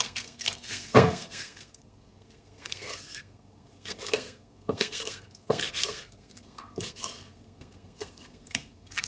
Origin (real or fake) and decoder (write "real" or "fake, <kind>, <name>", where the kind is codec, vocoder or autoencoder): fake, codec, SNAC